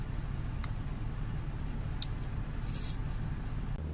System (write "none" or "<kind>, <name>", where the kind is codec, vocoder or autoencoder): none